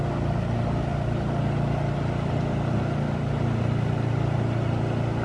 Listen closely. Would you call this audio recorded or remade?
recorded